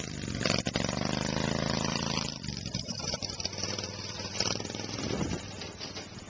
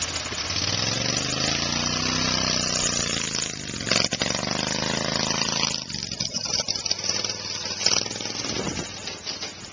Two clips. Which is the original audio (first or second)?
second